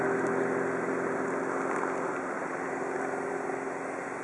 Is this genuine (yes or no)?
yes